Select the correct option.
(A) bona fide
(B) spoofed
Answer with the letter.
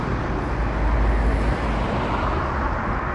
A